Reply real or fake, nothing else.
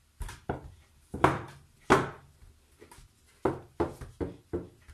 real